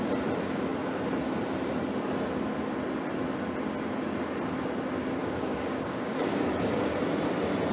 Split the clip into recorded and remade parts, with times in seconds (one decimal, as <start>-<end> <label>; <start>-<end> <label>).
0.0-5.2 recorded; 5.2-7.0 remade; 7.0-7.7 recorded